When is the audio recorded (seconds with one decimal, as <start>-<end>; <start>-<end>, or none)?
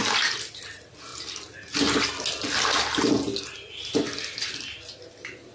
1.1-4.4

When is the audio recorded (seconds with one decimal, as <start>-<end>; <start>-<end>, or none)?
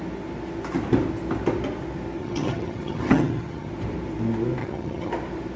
0.0-2.2; 3.7-4.6; 5.1-5.6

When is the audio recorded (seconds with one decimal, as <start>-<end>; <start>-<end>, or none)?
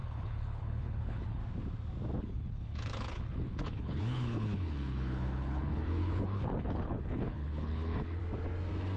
1.4-2.2; 8.2-9.0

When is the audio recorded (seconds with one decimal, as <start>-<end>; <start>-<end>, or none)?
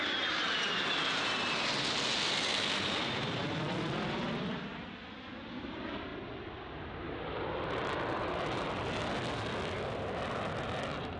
0.0-11.2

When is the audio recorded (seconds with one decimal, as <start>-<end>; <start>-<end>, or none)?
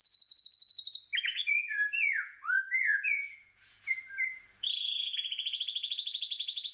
0.0-1.2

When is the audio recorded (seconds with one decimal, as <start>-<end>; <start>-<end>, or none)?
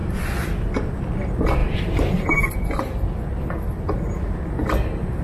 0.0-1.6; 2.8-5.2